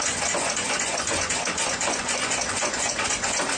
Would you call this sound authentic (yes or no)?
no